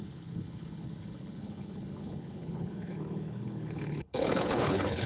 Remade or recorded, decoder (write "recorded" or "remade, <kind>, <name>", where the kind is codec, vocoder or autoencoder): remade, codec, HILCodec